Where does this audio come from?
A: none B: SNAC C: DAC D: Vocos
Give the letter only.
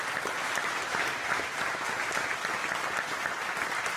A